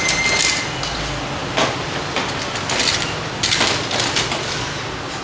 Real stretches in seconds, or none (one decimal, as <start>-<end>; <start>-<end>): 0.0-5.2